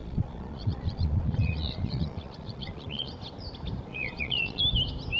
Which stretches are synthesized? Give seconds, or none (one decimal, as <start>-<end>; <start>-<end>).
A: 0.0-3.1; 3.9-4.6

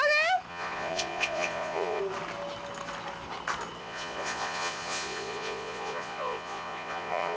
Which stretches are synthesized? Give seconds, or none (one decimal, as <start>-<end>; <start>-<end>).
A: 0.5-2.0; 3.8-7.4

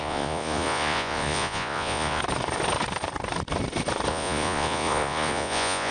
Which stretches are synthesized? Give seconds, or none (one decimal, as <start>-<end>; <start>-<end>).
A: 0.0-2.2; 4.1-5.9

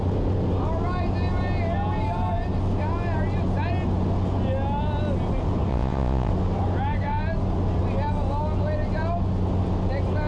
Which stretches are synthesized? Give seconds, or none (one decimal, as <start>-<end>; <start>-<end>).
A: 5.7-6.3

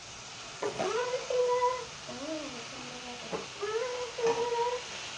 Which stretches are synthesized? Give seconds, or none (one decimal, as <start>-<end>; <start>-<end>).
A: 0.0-1.4